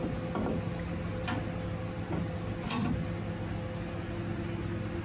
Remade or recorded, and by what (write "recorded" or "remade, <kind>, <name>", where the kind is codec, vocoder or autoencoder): recorded